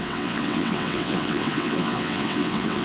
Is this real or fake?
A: fake